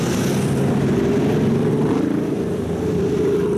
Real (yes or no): yes